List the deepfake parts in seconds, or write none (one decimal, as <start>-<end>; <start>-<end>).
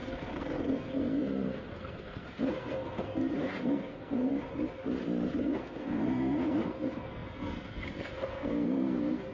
0.0-4.3; 5.4-9.3